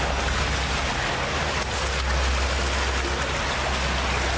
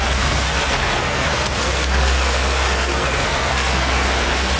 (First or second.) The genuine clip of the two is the first